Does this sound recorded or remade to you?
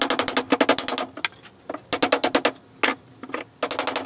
recorded